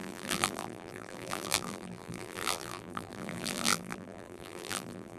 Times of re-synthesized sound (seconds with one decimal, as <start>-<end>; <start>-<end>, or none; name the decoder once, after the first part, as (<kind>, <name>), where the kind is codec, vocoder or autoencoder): 0.0-5.2 (vocoder, BigVGAN v2)